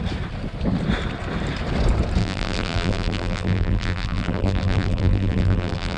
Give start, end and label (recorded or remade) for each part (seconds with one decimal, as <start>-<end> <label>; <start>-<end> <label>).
0.0-2.2 recorded; 2.2-6.0 remade